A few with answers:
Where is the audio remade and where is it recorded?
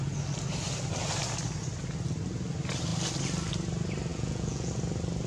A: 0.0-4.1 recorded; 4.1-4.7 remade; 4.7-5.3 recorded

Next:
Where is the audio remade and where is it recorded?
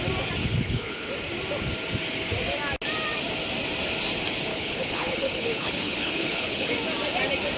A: 0.0-0.4 recorded; 0.4-1.1 remade; 1.1-4.5 recorded; 4.5-6.7 remade; 6.7-7.6 recorded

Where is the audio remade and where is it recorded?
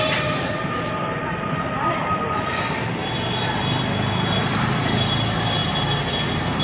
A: 0.0-3.0 remade; 3.0-4.5 recorded; 4.5-5.6 remade; 5.6-6.6 recorded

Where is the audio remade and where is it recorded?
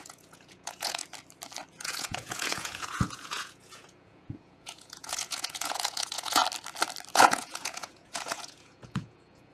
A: 0.0-1.0 remade; 1.0-1.7 recorded; 1.7-6.4 remade; 6.4-7.1 recorded; 7.1-9.5 remade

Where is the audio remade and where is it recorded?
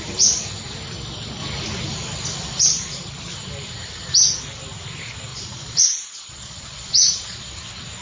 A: 0.0-5.3 recorded; 5.3-7.5 remade; 7.5-8.0 recorded